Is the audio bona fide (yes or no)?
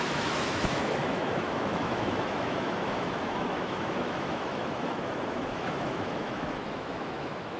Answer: no